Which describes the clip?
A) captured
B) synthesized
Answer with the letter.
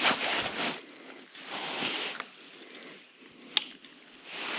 A